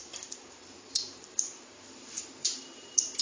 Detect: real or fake fake